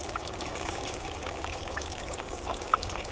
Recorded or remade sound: remade